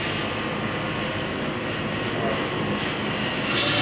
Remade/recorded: recorded